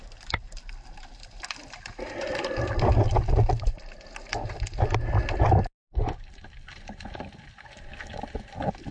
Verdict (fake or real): real